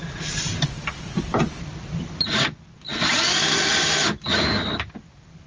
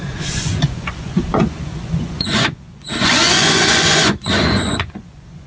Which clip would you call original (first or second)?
first